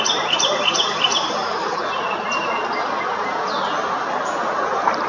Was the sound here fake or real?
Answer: real